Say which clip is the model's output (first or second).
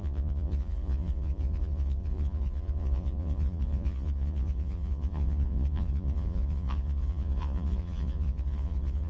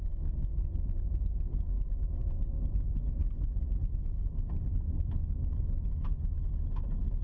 first